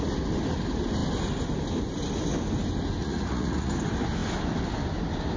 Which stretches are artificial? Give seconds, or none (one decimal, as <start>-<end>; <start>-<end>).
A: 3.0-3.7